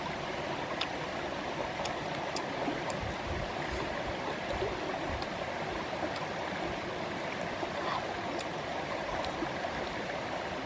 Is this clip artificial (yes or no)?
no